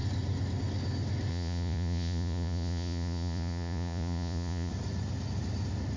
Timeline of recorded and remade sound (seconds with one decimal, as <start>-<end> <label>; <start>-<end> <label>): 0.0-1.3 recorded; 1.3-4.7 remade; 4.7-6.0 recorded